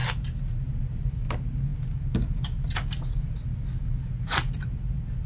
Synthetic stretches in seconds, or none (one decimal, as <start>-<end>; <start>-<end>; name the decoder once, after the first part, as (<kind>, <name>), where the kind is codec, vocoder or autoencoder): none

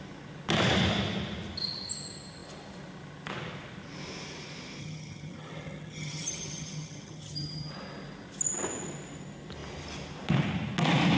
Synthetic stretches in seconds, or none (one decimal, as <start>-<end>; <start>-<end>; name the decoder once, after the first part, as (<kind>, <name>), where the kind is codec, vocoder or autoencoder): 4.8-7.7 (vocoder, HiFi-GAN)